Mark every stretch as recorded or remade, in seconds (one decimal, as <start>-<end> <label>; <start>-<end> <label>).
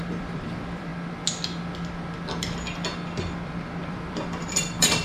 0.0-0.9 remade; 0.9-3.9 recorded; 3.9-5.0 remade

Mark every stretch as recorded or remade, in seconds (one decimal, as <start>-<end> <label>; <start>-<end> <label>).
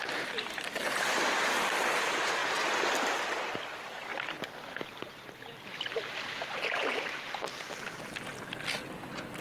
0.0-2.4 remade; 2.4-3.5 recorded; 3.5-4.1 remade; 4.1-5.1 recorded; 5.1-8.3 remade; 8.3-9.4 recorded